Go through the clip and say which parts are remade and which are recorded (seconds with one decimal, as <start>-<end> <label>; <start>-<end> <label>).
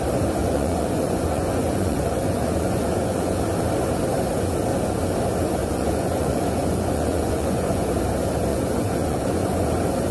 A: 0.0-0.4 recorded; 0.4-3.4 remade; 3.4-5.6 recorded; 5.6-7.8 remade; 7.8-8.5 recorded; 8.5-9.7 remade; 9.7-10.1 recorded